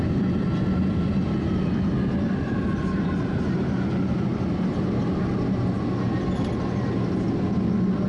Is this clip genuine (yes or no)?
yes